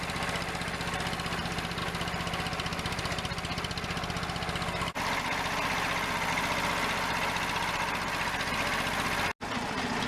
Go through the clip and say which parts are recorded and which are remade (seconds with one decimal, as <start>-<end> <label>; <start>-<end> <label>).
0.0-10.1 recorded